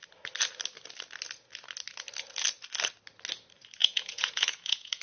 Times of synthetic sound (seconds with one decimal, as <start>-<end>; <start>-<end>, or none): 3.8-5.0